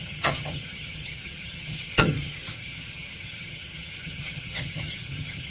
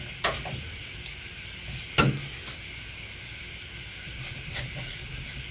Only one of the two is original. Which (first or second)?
second